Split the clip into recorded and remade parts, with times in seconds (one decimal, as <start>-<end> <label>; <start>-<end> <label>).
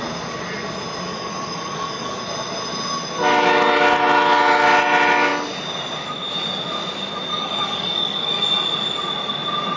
0.0-1.1 recorded; 1.1-2.2 remade; 2.2-7.3 recorded; 7.3-8.4 remade; 8.4-9.8 recorded